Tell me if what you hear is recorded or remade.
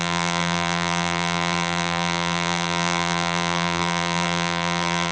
remade